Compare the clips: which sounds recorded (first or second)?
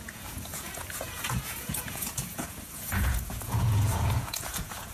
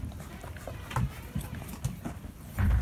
second